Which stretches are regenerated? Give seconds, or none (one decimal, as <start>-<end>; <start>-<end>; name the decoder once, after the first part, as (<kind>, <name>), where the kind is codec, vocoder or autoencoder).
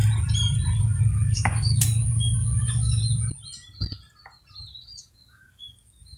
0.8-3.0 (codec, DAC); 5.0-6.2